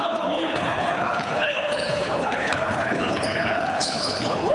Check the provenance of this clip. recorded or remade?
remade